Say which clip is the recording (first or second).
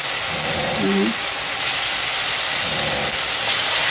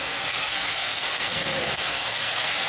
first